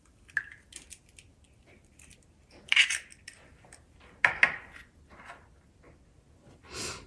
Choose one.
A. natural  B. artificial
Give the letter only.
A